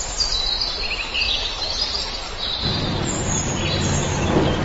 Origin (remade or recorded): recorded